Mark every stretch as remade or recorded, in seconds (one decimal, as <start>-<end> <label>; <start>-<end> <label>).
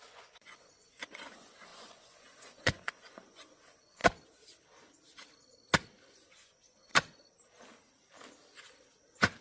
0.0-4.0 remade; 4.0-6.3 recorded; 6.3-6.9 remade; 6.9-9.4 recorded